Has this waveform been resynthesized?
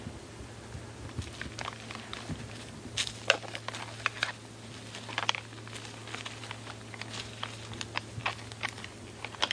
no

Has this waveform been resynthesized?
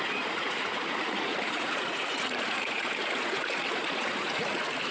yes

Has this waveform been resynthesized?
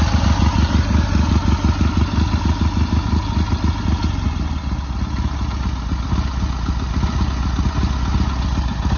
no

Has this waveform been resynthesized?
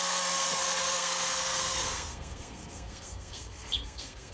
yes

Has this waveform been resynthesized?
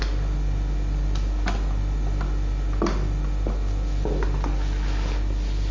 no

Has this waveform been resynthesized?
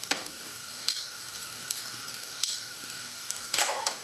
yes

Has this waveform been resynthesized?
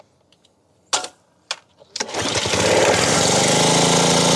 no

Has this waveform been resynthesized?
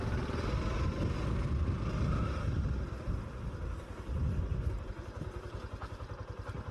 no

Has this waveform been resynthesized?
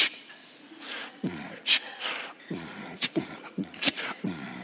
yes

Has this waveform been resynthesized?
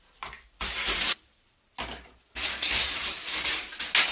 no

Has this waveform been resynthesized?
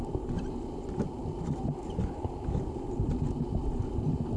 yes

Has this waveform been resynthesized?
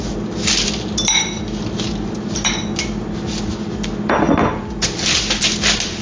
no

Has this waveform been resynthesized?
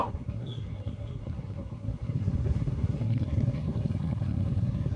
yes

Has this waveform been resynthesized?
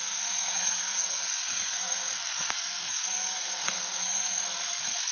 yes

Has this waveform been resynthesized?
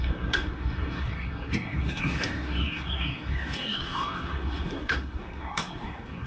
yes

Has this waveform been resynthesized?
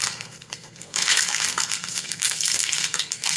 yes